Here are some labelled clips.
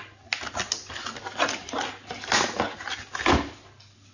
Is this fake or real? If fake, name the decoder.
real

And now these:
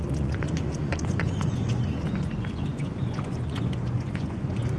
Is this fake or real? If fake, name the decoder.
fake, vocoder, Vocos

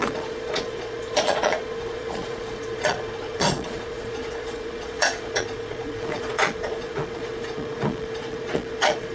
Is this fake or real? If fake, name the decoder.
fake, vocoder, Vocos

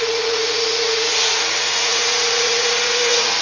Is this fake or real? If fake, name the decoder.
fake, vocoder, Vocos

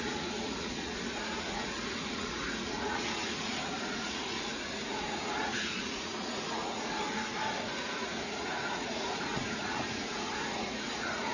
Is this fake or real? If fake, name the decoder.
fake, vocoder, Vocos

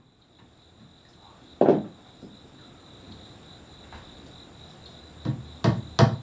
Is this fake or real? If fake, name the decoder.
real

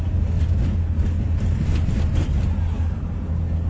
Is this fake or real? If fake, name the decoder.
real